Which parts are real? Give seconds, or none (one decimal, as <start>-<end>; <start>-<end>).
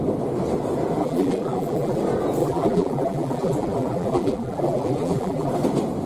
0.0-1.0; 2.0-2.4; 5.5-6.1